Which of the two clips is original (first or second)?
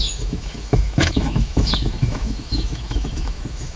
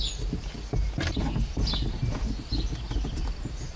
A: second